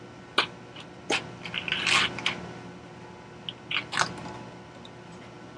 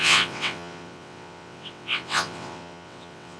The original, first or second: first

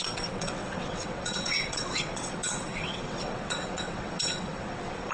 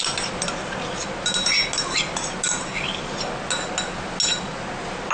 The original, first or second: second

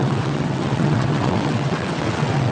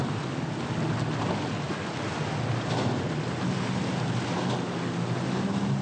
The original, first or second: second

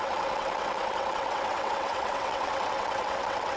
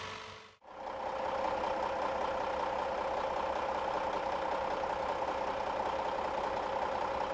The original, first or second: second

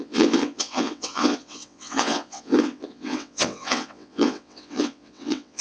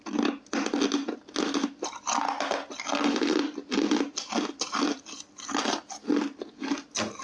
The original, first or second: second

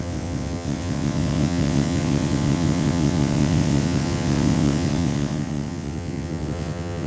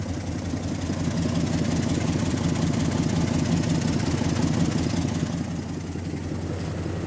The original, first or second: second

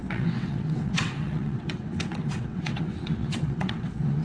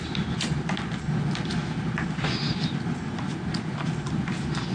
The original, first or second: second